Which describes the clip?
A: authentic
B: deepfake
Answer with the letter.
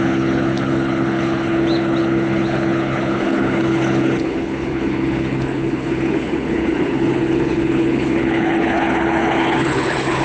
B